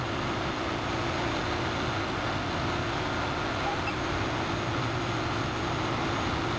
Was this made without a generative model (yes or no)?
yes